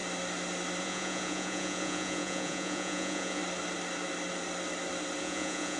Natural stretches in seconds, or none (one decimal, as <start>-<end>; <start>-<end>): 0.0-0.8; 3.4-5.2